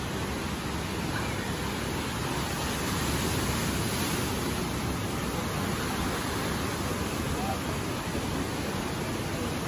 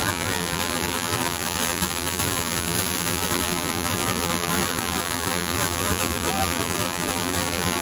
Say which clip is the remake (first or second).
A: second